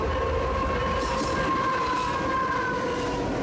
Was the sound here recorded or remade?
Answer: recorded